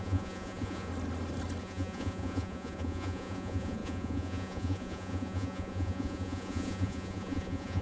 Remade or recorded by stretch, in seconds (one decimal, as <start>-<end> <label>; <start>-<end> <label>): 0.0-0.9 remade; 0.9-1.6 recorded; 1.6-7.8 remade